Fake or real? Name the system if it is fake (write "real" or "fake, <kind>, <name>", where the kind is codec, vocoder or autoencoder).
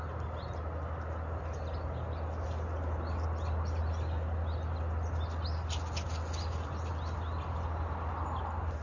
real